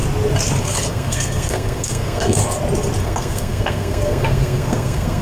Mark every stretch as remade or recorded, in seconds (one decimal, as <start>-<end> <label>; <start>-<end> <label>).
0.0-0.6 recorded; 0.6-2.4 remade; 2.4-3.0 recorded; 3.0-5.2 remade